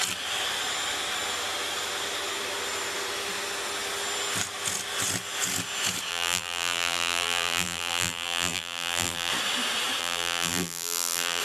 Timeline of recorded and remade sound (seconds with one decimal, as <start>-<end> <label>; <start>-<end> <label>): 0.0-6.1 recorded; 6.1-9.3 remade; 9.3-10.0 recorded; 10.0-11.4 remade